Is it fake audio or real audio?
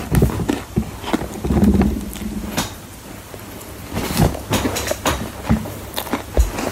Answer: real